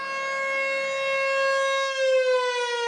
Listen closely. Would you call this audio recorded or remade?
recorded